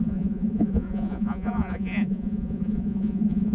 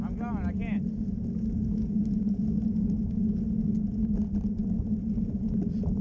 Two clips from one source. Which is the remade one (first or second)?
first